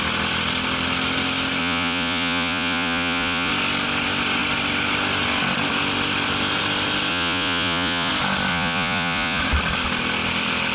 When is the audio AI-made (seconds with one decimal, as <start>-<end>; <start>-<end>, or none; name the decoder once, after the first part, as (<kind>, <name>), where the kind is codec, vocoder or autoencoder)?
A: 1.6-3.5 (vocoder, Vocos); 7.1-8.1; 8.5-9.4